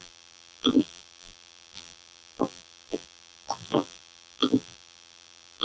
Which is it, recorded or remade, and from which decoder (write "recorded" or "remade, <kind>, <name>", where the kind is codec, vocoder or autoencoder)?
remade, vocoder, BigVGAN v2